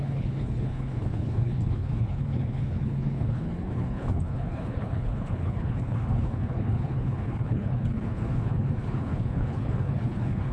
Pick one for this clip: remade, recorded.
remade